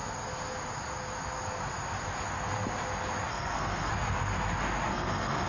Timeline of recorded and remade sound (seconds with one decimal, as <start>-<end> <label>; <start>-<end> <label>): 0.0-3.3 recorded; 3.3-3.9 remade; 3.9-4.9 recorded; 4.9-5.5 remade